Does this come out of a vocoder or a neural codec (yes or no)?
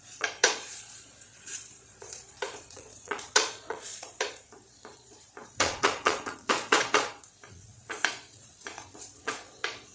yes